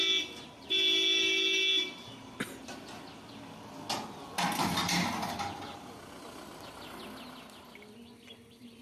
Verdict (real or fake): real